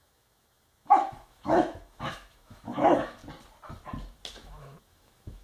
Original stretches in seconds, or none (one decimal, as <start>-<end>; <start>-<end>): 3.2-4.3